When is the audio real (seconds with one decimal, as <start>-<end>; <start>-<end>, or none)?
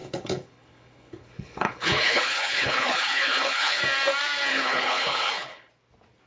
3.8-4.5; 5.7-6.3